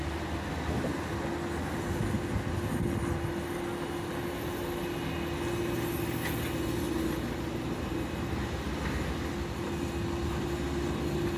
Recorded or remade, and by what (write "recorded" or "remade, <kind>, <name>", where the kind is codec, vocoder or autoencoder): recorded